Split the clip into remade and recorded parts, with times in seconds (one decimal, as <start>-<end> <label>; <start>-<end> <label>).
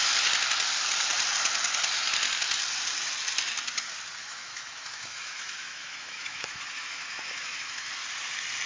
0.0-4.2 recorded; 4.2-7.9 remade; 7.9-8.7 recorded